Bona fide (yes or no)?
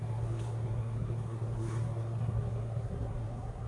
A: no